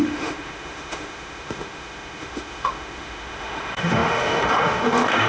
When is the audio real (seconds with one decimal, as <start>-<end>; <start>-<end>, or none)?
none